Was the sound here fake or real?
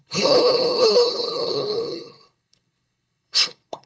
fake